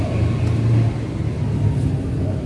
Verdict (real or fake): real